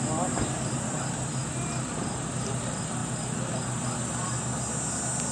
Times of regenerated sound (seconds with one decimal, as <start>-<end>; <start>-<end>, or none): none